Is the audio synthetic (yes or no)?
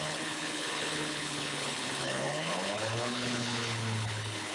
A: yes